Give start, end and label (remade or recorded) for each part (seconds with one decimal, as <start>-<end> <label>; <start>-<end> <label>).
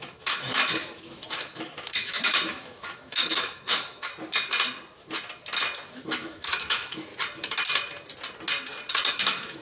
0.0-4.1 remade; 4.1-5.9 recorded; 5.9-7.1 remade; 7.1-9.1 recorded; 9.1-9.6 remade